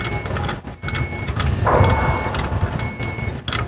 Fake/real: real